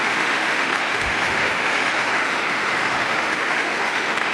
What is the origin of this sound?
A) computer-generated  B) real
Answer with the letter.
A